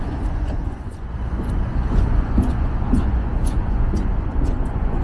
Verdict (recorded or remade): remade